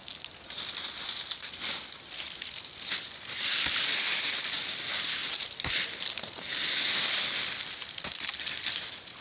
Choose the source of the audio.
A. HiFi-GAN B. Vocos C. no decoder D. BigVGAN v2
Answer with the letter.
C